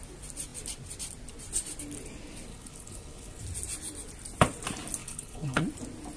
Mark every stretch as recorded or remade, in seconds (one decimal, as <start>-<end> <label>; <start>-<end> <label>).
0.0-2.5 recorded; 2.5-3.4 remade; 3.4-5.0 recorded; 5.0-5.6 remade; 5.6-6.2 recorded